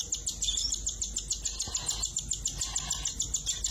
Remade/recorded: recorded